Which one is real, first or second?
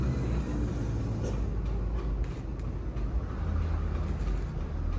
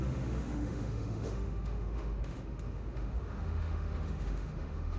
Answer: first